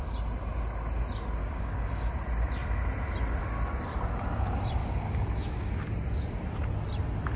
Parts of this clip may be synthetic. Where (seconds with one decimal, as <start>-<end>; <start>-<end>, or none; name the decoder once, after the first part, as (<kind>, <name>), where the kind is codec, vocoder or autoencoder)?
1.4-2.1 (codec, DAC); 4.8-5.7